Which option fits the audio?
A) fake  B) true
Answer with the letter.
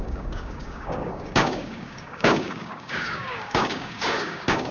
A